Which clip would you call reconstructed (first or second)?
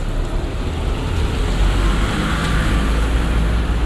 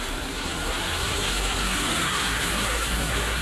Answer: second